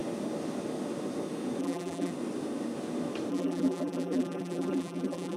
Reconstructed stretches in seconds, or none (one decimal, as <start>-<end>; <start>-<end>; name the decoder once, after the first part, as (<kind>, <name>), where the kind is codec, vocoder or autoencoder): 1.6-2.1 (vocoder, BigVGAN v2); 3.3-5.4